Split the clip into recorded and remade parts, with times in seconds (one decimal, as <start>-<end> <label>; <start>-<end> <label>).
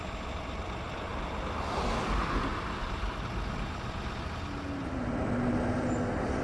0.0-6.4 recorded